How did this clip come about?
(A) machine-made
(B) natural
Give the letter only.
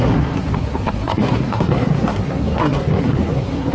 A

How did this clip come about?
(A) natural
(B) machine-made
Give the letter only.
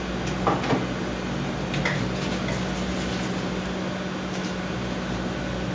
A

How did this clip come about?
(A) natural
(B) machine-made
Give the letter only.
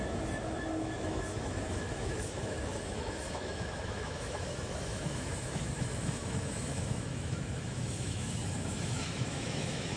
B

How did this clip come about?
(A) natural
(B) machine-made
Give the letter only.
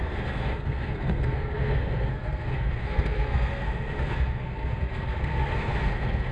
B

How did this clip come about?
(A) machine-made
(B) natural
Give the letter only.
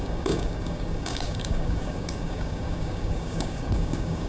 A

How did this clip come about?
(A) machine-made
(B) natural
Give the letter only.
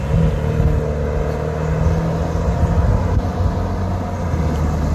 B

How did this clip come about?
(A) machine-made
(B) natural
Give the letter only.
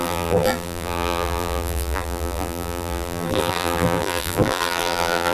A